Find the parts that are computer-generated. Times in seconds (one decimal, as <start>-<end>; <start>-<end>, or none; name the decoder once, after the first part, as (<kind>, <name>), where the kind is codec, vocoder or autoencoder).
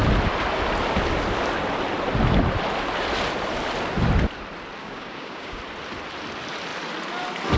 4.8-5.6 (codec, DAC)